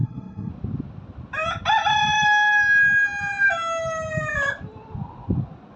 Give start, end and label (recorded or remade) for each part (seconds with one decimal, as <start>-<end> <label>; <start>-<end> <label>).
0.0-0.5 remade; 0.5-5.8 recorded